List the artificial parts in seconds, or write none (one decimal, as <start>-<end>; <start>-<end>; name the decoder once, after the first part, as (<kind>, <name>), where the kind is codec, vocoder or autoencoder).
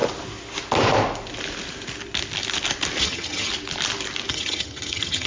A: 3.0-3.5 (vocoder, HiFi-GAN); 4.3-5.3